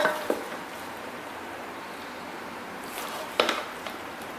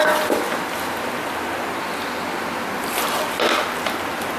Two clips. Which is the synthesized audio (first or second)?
first